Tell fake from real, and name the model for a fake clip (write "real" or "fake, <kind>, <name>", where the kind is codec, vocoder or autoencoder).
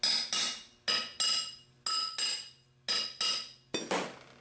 real